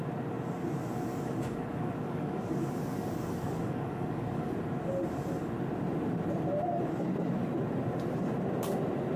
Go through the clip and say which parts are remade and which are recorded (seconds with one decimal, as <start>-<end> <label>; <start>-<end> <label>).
0.0-1.1 recorded; 1.1-4.5 remade; 4.5-9.2 recorded